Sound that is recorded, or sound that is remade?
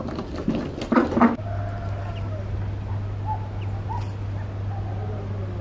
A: recorded